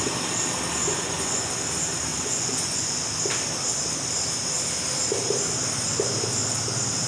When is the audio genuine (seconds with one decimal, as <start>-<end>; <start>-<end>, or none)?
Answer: 0.0-0.8; 1.5-2.1; 3.0-7.1